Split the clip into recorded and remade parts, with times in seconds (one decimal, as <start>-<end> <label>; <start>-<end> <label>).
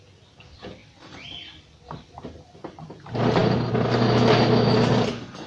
0.0-5.5 recorded